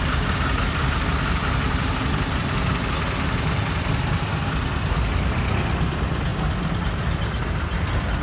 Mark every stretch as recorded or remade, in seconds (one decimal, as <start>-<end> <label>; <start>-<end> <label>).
0.0-8.2 recorded